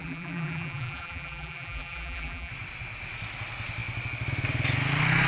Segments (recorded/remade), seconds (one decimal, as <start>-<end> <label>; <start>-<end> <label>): 0.0-2.5 remade; 2.5-5.3 recorded